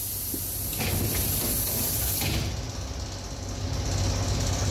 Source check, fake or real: real